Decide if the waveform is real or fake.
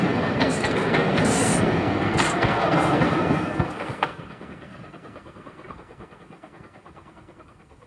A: fake